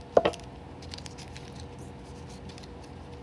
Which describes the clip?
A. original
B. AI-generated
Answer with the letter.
A